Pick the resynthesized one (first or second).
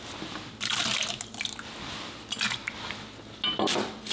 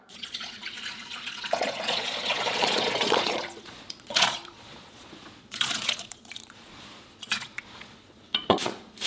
second